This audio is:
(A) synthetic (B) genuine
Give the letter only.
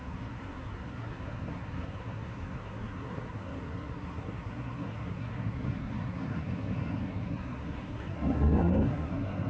A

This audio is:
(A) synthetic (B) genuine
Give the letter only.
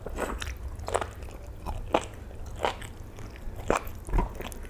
B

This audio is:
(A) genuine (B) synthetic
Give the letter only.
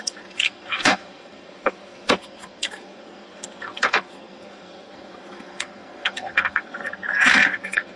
B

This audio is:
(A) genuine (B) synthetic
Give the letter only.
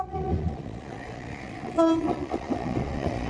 B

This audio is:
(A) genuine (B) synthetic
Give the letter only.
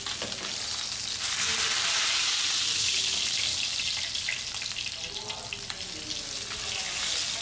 A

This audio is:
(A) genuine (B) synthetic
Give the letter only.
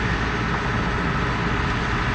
A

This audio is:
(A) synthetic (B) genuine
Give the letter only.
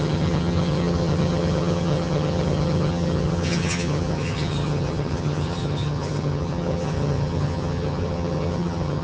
A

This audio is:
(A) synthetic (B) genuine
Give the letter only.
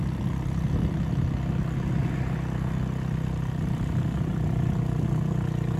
B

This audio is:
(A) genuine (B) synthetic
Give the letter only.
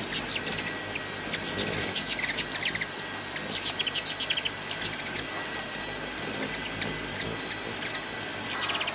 A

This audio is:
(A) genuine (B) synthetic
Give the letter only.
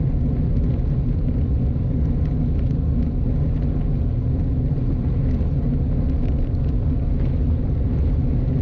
A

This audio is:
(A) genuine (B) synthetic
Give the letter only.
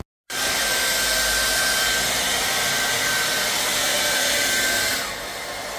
A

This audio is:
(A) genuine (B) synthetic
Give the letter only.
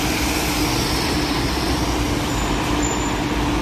A